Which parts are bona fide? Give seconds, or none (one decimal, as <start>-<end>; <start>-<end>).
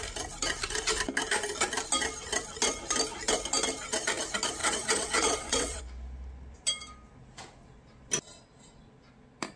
0.0-4.6; 5.8-9.6